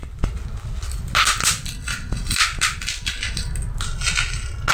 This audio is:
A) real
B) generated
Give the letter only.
A